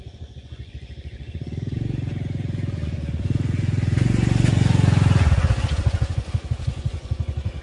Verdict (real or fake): fake